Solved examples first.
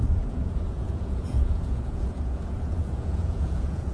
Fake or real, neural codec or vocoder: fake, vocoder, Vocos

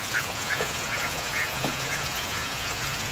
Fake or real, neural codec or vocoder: fake, vocoder, Vocos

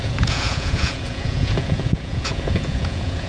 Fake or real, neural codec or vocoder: fake, vocoder, Vocos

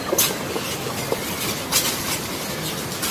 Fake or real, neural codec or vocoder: real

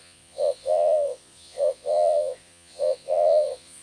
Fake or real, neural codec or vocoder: fake, vocoder, Vocos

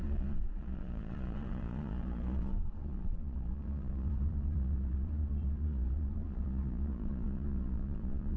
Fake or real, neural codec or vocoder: fake, vocoder, Vocos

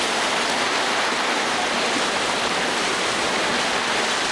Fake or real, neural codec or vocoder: real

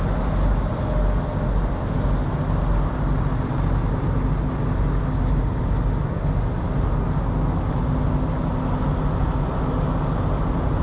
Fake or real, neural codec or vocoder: real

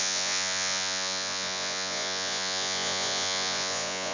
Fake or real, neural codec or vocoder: fake, vocoder, Vocos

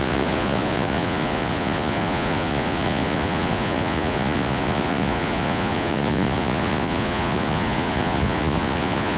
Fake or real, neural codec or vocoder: fake, vocoder, Vocos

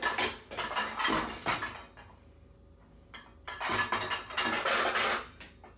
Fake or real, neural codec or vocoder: real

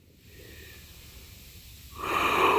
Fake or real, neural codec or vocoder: real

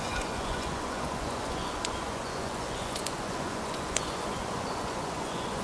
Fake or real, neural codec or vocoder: fake, vocoder, Vocos